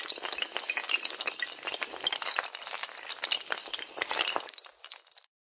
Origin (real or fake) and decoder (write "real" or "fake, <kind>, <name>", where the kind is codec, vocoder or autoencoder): real